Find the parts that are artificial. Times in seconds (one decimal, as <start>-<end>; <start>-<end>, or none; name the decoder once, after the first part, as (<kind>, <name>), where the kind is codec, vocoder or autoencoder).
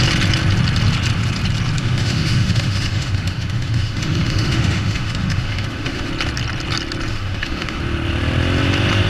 1.8-6.1 (autoencoder, DAC-VAE); 7.1-7.8